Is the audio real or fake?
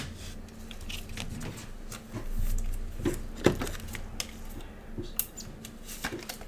real